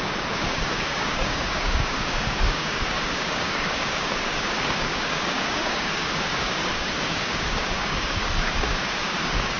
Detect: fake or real fake